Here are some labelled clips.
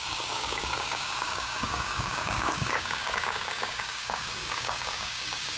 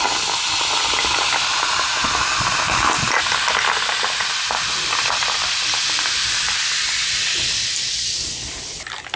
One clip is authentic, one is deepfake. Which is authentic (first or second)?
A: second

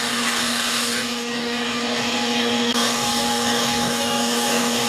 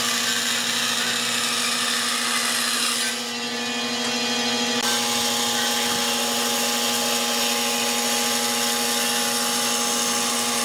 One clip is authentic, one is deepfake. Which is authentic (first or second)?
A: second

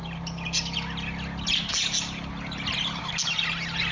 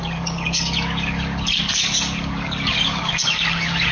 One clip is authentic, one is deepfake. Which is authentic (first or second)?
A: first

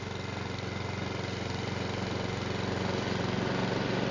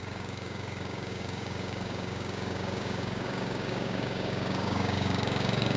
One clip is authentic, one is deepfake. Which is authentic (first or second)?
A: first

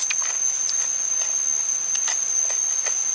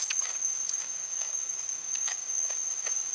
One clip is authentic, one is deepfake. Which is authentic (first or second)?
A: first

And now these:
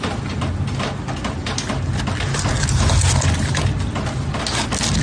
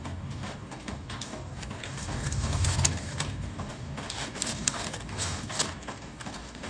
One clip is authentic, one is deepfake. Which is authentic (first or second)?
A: first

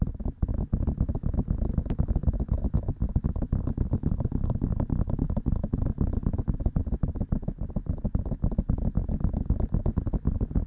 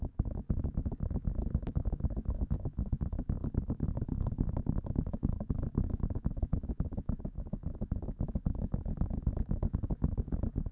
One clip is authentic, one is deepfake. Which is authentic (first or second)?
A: first